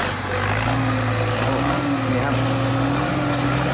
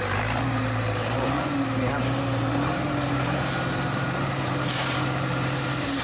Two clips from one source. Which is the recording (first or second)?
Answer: first